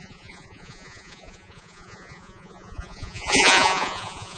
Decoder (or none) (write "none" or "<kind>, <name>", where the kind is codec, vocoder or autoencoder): vocoder, Vocos